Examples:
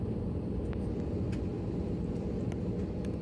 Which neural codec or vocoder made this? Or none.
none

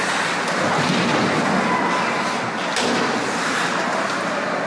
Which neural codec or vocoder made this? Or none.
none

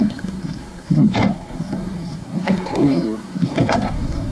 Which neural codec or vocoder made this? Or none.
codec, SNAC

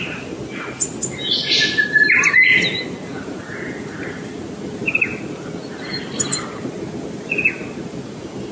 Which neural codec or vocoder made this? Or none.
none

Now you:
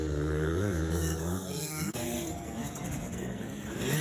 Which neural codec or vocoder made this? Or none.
codec, SNAC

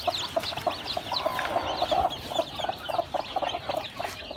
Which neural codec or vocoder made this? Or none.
none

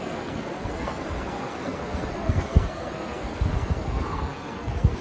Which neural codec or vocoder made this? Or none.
codec, SNAC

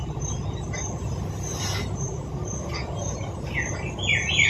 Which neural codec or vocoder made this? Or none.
none